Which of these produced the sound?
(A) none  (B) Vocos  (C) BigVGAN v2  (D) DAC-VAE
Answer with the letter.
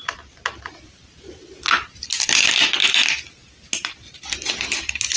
A